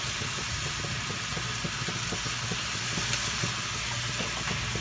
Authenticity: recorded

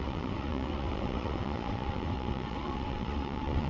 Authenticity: remade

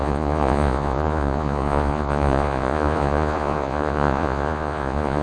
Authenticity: remade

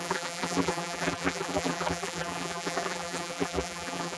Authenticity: remade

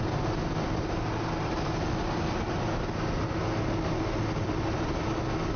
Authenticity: recorded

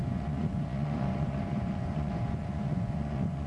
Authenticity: remade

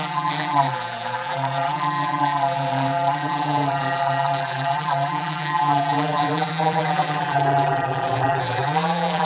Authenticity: remade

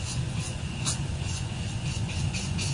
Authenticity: remade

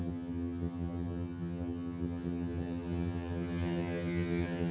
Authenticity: remade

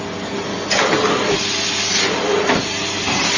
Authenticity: recorded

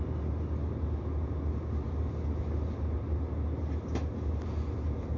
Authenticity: recorded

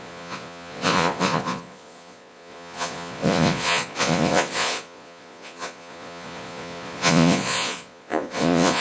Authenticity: remade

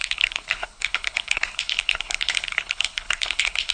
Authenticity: remade